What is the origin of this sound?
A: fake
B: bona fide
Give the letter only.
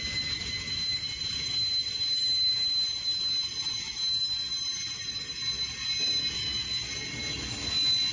B